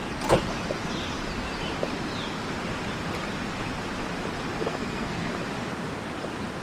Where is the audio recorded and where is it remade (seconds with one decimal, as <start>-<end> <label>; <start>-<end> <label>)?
0.0-4.6 recorded; 4.6-5.3 remade; 5.3-6.6 recorded